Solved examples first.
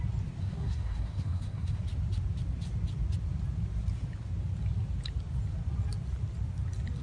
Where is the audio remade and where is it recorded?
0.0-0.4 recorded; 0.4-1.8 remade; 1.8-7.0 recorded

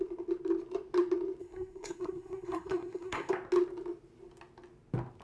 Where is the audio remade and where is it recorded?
0.0-1.4 recorded; 1.4-3.3 remade; 3.3-5.2 recorded

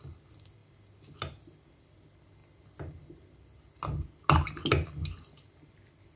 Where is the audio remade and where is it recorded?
0.0-6.2 recorded

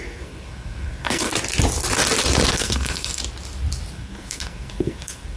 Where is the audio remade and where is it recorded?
0.0-1.3 remade; 1.3-2.5 recorded; 2.5-3.2 remade; 3.2-3.9 recorded; 3.9-5.4 remade

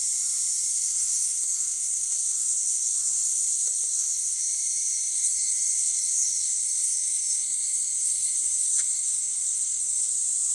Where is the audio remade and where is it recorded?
0.0-0.7 recorded; 0.7-4.4 remade; 4.4-5.1 recorded; 5.1-10.1 remade; 10.1-10.5 recorded

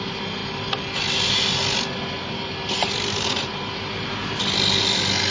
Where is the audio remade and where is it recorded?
0.0-5.3 recorded

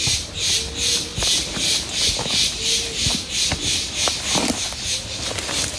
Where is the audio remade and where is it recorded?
0.0-5.8 recorded

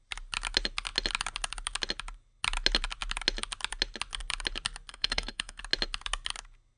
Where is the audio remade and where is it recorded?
0.0-4.9 recorded; 4.9-5.6 remade; 5.6-6.8 recorded